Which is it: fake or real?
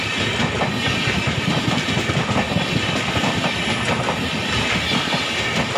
real